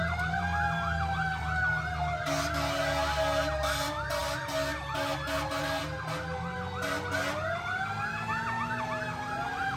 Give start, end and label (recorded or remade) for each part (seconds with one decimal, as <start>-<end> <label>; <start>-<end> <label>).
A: 0.0-9.8 recorded